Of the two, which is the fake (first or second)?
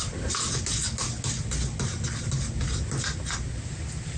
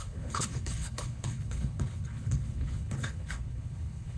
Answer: second